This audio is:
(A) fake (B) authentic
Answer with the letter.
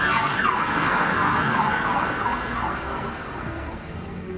A